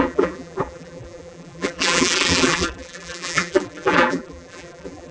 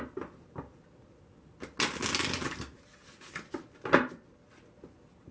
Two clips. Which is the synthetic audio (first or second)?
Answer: first